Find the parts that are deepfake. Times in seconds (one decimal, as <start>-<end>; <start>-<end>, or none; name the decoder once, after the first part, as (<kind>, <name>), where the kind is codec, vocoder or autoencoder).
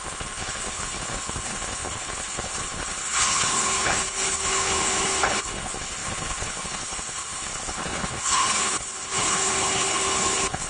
0.0-10.7 (codec, HILCodec)